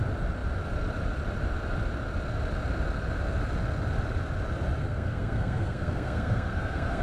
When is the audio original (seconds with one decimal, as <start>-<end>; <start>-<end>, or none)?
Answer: 0.0-4.8